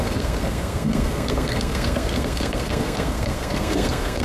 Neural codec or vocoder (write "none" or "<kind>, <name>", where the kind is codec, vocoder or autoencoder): codec, SNAC